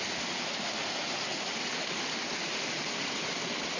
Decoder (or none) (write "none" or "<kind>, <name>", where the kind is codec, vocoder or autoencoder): none